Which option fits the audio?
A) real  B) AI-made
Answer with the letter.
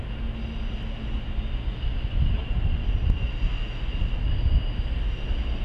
A